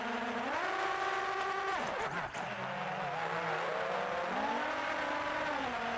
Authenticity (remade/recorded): recorded